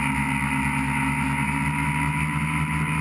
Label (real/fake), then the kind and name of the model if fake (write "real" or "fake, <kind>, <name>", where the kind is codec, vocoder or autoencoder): real